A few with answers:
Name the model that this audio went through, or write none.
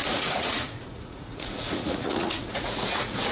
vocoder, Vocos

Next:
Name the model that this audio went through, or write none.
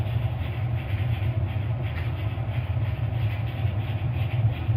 vocoder, BigVGAN v2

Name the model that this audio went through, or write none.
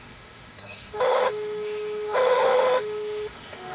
autoencoder, DAC-VAE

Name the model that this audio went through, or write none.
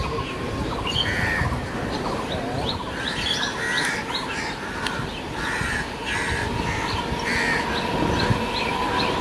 none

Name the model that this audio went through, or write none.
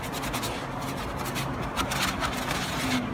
none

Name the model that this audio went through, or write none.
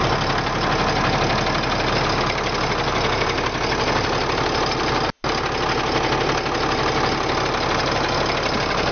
none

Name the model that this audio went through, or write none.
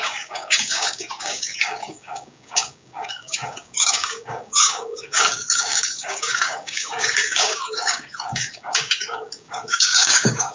codec, DAC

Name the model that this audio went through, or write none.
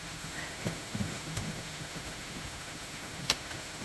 autoencoder, DAC-VAE